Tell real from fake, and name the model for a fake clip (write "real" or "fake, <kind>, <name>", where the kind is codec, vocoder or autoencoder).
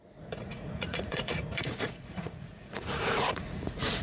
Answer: fake, vocoder, Vocos